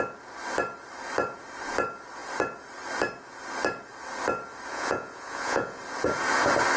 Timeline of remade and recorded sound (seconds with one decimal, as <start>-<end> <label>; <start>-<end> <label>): 0.0-4.7 recorded; 4.7-5.8 remade; 5.8-6.8 recorded